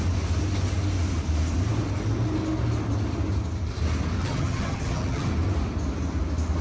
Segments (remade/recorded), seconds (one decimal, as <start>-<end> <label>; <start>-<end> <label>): 0.0-4.2 recorded; 4.2-5.3 remade; 5.3-6.6 recorded